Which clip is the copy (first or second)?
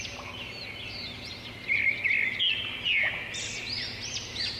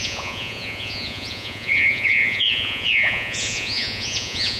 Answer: second